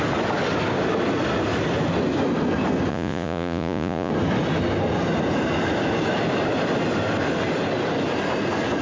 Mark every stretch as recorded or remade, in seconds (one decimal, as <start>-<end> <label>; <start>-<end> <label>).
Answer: 0.0-2.9 recorded; 2.9-4.1 remade; 4.1-8.8 recorded